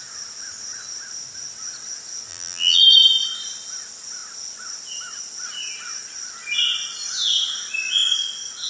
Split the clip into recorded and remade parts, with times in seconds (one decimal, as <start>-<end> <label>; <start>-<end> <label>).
0.0-2.3 recorded; 2.3-2.8 remade; 2.8-8.7 recorded